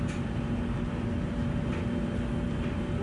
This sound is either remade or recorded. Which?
recorded